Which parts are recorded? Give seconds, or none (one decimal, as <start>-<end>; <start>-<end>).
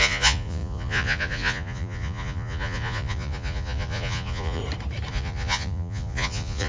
4.6-5.1